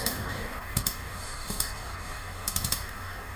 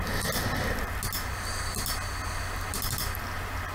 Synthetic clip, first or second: first